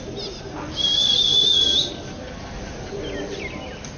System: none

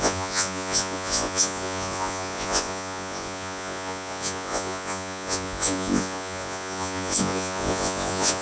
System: vocoder, Vocos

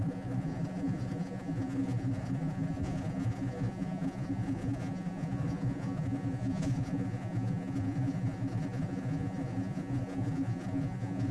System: vocoder, Vocos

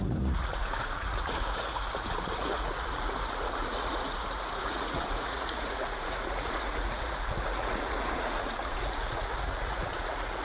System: vocoder, Vocos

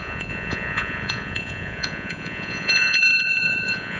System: vocoder, Vocos